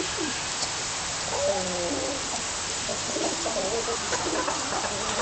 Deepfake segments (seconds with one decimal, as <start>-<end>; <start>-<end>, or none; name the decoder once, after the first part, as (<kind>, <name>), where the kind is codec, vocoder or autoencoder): none